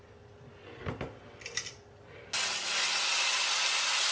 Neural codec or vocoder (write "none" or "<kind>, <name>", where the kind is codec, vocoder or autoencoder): none